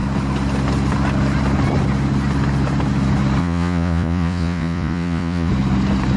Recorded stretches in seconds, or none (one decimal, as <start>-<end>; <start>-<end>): 0.0-3.4; 5.5-6.2